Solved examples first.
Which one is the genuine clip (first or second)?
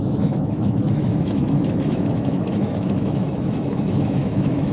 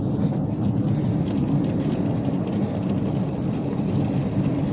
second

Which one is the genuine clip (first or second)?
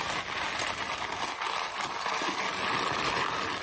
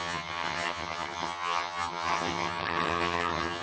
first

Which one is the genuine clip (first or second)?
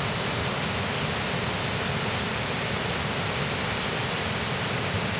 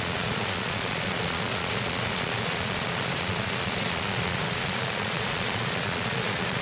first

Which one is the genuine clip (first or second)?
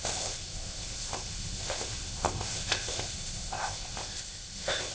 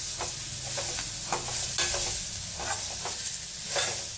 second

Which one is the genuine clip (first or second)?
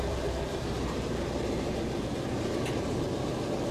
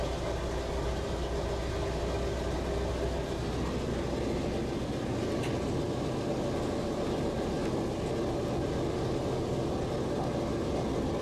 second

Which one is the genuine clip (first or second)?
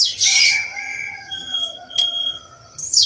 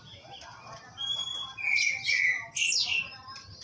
second